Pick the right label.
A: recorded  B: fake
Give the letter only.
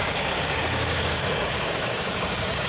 B